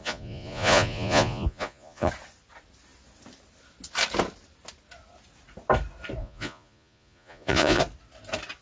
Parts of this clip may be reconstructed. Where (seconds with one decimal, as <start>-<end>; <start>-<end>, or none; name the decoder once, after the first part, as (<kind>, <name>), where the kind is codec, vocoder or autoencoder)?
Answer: 0.0-2.1 (vocoder, Vocos); 6.2-7.8